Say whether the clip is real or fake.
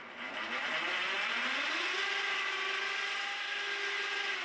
real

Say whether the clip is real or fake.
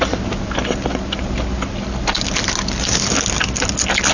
real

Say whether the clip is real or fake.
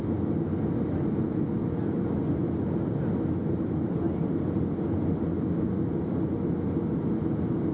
real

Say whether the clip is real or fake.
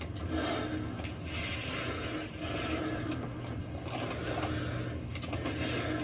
real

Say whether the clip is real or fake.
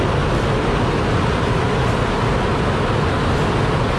real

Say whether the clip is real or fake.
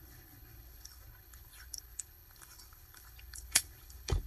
fake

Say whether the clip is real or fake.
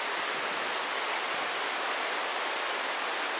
real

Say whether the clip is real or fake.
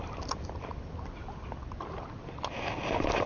real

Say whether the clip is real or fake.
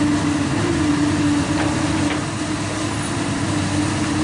real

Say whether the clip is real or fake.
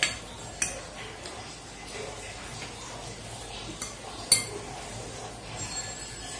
real